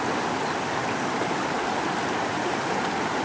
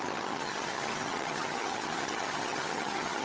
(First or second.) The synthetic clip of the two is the second